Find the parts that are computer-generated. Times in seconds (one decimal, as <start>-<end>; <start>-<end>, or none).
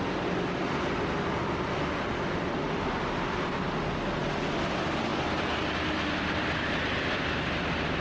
none